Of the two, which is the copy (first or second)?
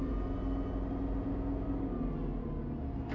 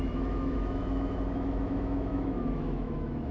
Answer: second